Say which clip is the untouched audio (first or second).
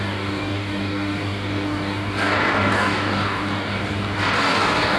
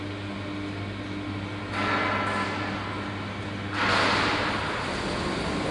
second